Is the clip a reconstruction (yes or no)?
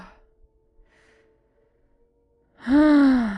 no